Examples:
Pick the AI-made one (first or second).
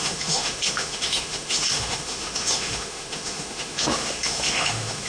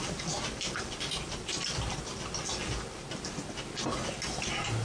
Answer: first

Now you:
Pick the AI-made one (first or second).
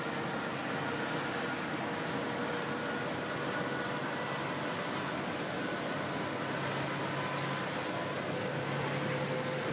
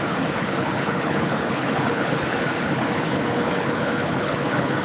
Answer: second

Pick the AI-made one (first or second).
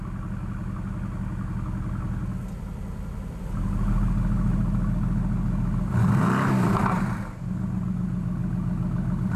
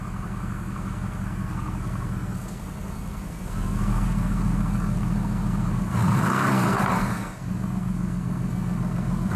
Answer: second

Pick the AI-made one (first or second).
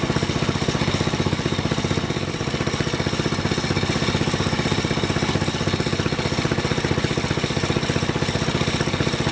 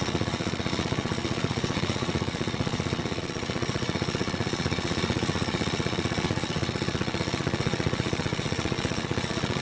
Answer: second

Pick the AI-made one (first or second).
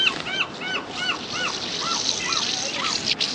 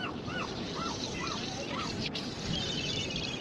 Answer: second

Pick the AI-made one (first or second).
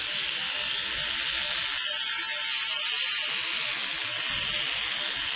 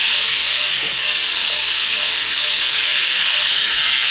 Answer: second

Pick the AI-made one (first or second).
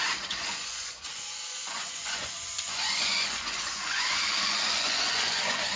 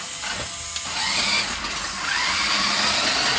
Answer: first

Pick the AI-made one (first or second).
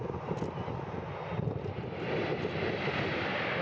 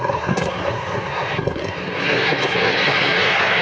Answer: second